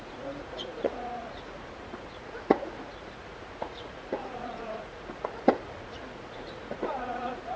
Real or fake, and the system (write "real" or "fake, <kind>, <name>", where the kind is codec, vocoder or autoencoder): fake, vocoder, Vocos